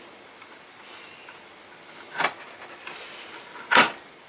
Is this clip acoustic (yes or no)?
yes